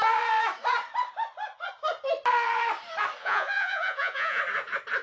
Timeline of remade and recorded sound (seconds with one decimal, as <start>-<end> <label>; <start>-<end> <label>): 0.0-3.2 recorded; 3.2-4.4 remade; 4.4-5.0 recorded